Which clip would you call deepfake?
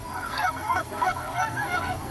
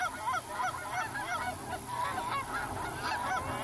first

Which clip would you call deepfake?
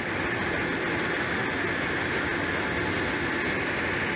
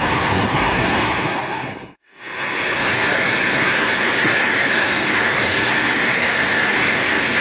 second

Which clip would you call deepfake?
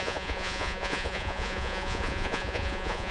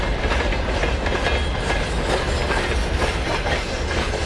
first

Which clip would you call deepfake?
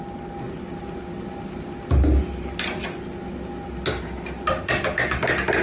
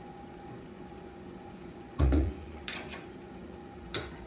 second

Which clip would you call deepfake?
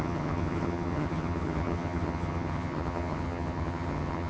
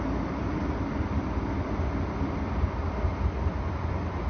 first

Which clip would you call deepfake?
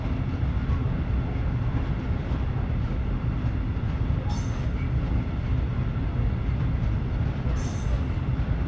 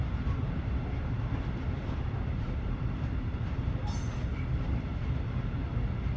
second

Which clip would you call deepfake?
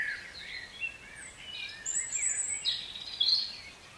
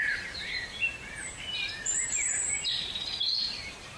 second